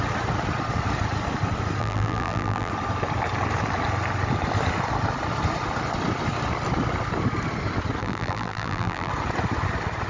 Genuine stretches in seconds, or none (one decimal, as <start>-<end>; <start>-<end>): 0.0-1.8; 2.7-8.0; 9.1-10.1